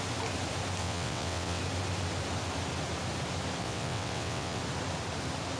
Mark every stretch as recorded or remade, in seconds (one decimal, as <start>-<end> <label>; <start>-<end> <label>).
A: 0.0-0.8 recorded; 0.8-1.6 remade; 1.6-3.6 recorded; 3.6-4.6 remade; 4.6-5.6 recorded